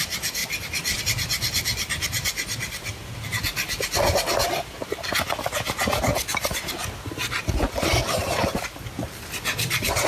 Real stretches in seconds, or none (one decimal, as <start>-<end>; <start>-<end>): 0.0-10.1